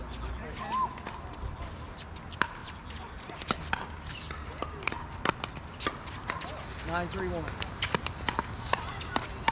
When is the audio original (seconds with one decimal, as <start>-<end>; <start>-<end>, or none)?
0.0-9.5